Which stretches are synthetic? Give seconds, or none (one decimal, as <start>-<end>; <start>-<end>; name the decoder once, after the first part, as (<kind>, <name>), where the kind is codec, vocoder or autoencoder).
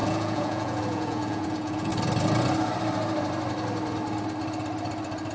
0.0-1.9 (vocoder, Vocos)